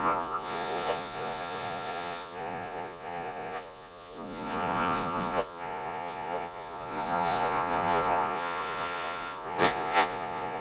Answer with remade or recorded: remade